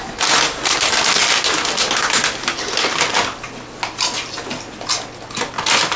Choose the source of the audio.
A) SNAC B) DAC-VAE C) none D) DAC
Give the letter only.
C